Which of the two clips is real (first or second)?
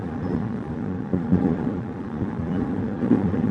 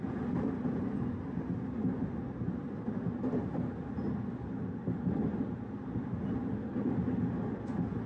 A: second